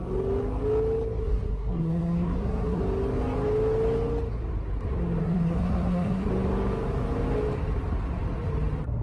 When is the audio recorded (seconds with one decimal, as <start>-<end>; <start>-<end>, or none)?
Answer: 0.0-1.2; 2.8-5.2; 6.3-9.0